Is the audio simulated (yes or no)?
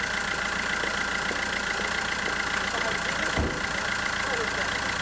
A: no